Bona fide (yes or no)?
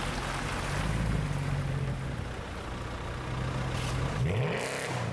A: yes